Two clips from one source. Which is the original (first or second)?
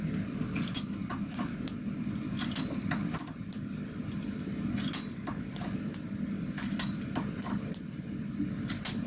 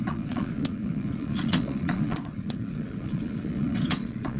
first